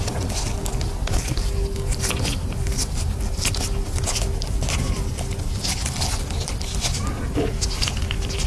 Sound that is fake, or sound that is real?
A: real